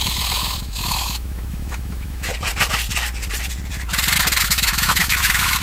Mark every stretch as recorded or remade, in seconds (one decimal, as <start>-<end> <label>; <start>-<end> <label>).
0.0-2.3 remade; 2.3-4.4 recorded; 4.4-5.6 remade